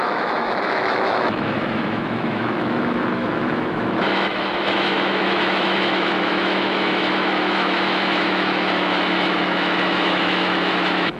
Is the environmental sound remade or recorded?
remade